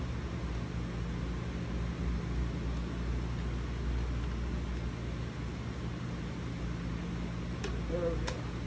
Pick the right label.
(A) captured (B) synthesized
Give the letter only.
A